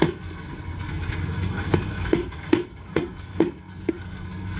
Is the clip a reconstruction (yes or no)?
yes